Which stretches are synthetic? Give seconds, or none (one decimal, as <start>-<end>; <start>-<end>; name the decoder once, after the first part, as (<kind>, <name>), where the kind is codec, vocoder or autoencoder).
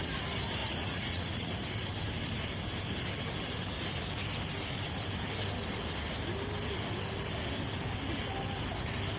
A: 0.6-1.5 (vocoder, Vocos)